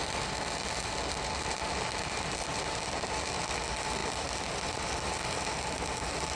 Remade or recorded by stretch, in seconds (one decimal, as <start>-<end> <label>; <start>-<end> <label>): 0.0-6.4 recorded